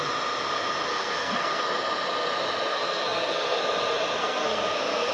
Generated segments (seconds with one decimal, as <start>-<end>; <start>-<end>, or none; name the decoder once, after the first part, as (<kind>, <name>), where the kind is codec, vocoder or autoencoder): 0.9-1.6 (codec, SNAC); 2.7-3.6; 4.2-5.1